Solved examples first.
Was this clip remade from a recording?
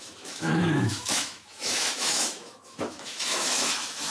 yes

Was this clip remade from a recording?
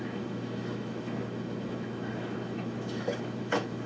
yes